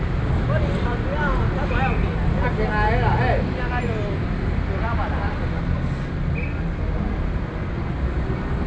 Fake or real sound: real